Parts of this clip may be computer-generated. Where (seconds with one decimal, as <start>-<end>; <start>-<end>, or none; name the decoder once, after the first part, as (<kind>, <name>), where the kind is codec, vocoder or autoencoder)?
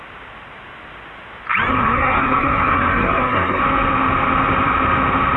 1.7-3.6 (codec, SNAC)